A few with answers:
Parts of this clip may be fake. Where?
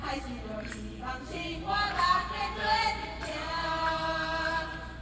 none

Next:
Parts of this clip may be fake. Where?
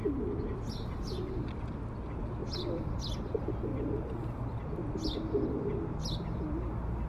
0.0-0.9 (vocoder, BigVGAN v2); 2.4-3.3; 3.7-6.4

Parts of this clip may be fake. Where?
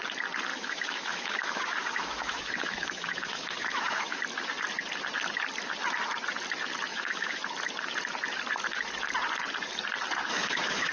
0.5-4.2 (autoencoder, DAC-VAE); 6.9-7.4; 10.3-10.9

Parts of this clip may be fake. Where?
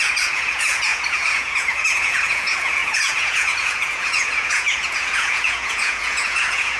0.0-6.8 (vocoder, Vocos)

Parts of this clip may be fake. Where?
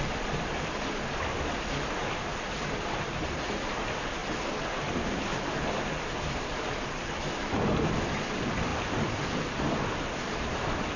0.0-4.2 (vocoder, BigVGAN v2); 5.1-11.0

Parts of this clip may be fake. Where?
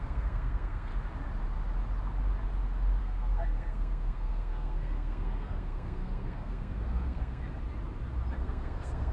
0.0-0.9 (codec, SNAC); 3.0-7.4; 8.3-9.1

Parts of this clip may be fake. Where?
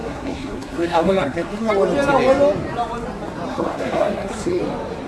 0.0-1.7 (codec, SNAC); 3.5-4.6